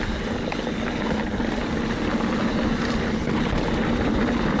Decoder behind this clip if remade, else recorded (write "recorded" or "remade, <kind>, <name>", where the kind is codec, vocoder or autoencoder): recorded